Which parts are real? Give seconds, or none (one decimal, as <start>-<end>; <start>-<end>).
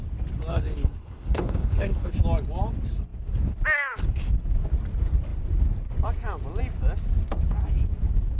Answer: 0.0-0.5; 2.1-8.4